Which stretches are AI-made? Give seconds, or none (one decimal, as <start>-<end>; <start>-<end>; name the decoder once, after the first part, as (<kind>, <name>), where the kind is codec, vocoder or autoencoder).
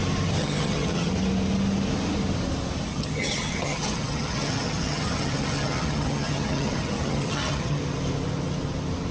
0.4-1.1 (vocoder, HiFi-GAN); 2.9-7.8